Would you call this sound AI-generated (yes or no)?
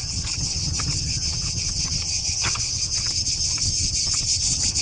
yes